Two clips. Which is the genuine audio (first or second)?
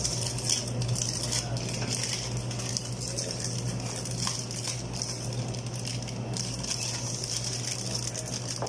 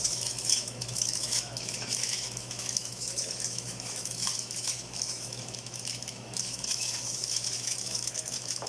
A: first